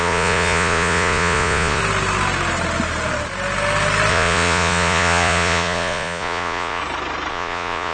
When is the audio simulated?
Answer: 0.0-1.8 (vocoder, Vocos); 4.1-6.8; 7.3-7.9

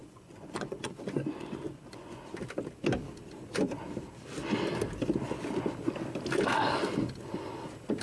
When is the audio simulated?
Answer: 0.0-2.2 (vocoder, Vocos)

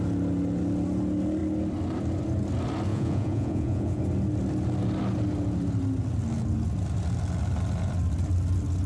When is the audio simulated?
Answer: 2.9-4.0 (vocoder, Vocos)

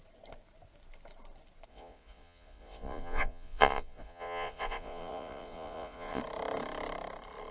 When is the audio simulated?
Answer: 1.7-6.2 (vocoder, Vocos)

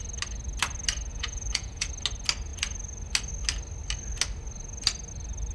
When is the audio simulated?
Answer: 1.1-1.9 (vocoder, Vocos)

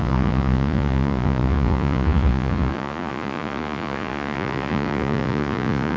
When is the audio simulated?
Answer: 0.0-6.0 (vocoder, Vocos)

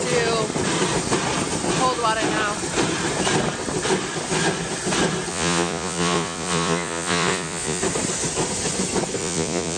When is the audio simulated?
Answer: 5.3-7.8 (vocoder, Vocos); 9.2-9.8

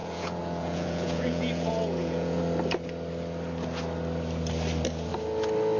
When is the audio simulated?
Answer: 0.0-2.4 (vocoder, Vocos)